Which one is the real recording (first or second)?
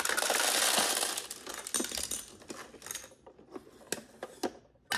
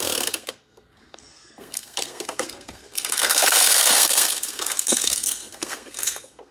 first